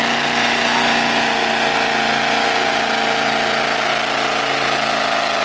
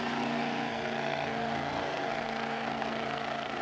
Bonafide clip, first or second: first